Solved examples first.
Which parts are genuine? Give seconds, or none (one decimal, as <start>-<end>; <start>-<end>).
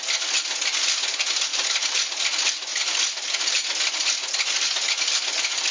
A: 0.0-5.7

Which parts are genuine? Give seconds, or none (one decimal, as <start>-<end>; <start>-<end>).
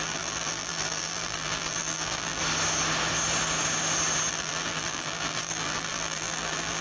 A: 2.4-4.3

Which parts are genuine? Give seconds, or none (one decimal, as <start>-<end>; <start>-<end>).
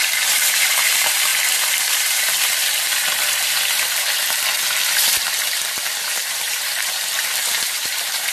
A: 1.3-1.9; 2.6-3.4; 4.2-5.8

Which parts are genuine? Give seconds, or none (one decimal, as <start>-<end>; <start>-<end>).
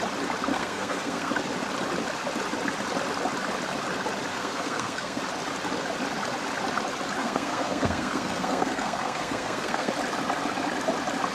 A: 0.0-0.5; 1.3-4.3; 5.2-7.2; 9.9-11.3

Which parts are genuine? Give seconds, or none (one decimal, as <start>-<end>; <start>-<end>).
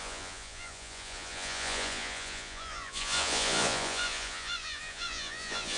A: none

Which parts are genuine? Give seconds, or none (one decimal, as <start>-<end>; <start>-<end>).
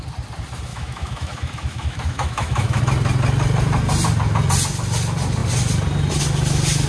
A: 0.0-0.7; 2.8-6.9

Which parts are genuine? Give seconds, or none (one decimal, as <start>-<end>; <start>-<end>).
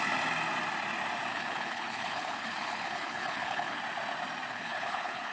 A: 0.0-1.3; 3.8-4.5